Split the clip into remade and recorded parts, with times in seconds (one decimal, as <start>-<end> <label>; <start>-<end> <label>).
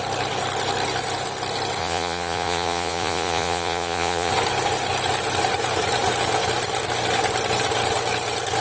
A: 0.0-1.8 recorded; 1.8-4.3 remade; 4.3-8.6 recorded